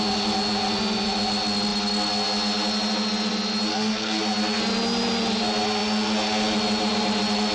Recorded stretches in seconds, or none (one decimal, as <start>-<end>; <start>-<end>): 0.0-3.7; 4.2-7.5